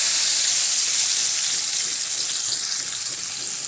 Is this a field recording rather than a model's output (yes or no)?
yes